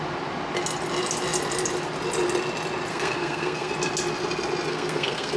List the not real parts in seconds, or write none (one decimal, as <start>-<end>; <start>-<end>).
2.9-3.7; 4.7-5.4